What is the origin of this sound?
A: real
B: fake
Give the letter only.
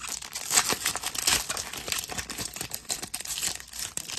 A